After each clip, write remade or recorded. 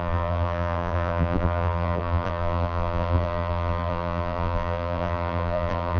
remade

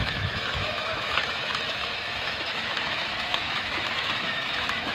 remade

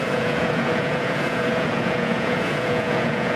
remade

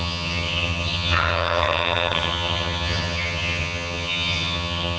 remade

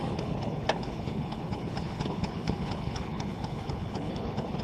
remade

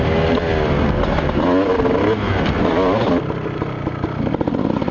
recorded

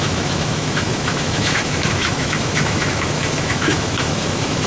remade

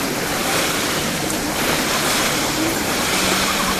recorded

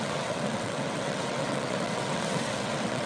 remade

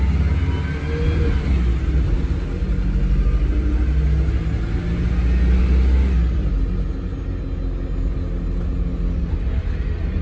recorded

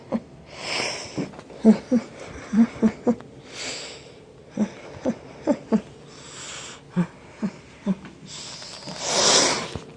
recorded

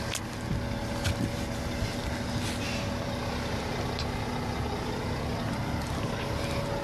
recorded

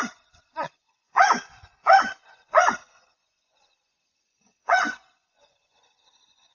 remade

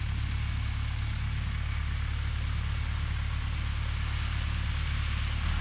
recorded